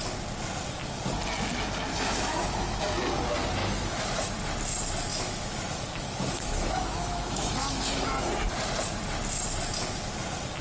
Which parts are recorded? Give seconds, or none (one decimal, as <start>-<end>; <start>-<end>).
0.0-1.9; 2.8-3.6; 4.3-5.1; 8.3-10.6